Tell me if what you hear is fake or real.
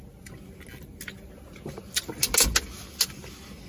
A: real